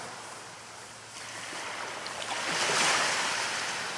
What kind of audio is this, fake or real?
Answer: real